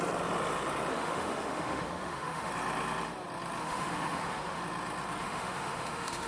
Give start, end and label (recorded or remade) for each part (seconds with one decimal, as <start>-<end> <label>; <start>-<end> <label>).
0.0-0.9 recorded; 0.9-2.5 remade; 2.5-3.6 recorded; 3.6-4.6 remade; 4.6-5.2 recorded; 5.2-6.3 remade